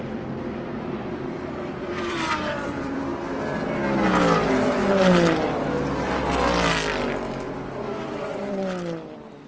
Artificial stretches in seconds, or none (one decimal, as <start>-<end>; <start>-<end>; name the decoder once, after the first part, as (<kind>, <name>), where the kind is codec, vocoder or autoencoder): 0.0-3.1 (vocoder, BigVGAN v2); 7.8-9.5